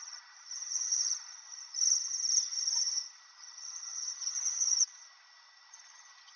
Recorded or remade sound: remade